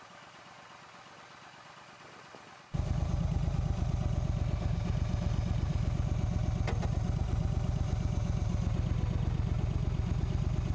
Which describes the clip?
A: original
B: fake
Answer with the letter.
A